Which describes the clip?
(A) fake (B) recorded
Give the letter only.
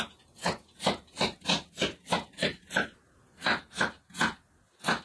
B